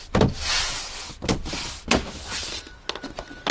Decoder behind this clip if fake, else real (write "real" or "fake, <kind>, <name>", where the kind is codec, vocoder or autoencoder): real